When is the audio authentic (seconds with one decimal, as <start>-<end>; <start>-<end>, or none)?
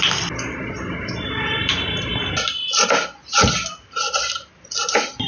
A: 0.0-5.3